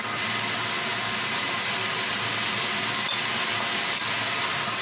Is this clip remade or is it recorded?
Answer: recorded